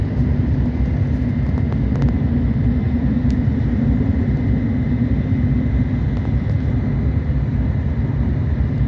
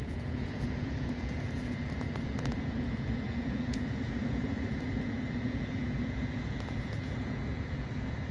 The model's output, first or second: second